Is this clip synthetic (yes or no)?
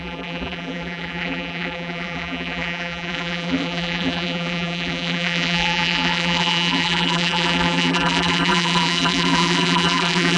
yes